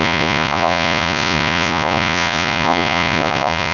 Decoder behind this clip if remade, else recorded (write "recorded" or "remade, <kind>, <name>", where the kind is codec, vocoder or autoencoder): remade, vocoder, Vocos